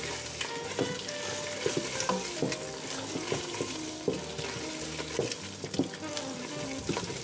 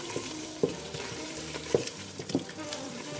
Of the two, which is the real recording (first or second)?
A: first